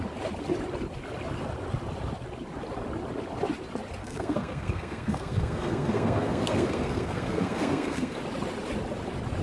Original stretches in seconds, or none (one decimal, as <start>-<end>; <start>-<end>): 0.0-4.0; 8.2-9.4